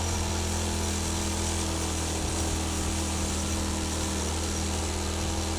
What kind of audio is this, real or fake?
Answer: real